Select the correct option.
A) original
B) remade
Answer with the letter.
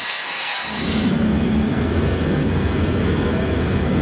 B